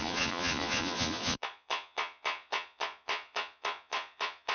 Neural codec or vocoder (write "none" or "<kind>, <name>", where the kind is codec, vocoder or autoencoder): vocoder, Vocos